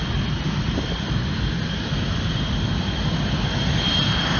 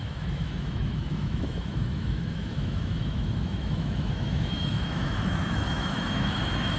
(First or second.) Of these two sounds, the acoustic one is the first